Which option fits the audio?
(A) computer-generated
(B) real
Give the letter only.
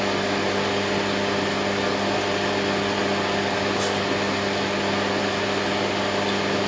B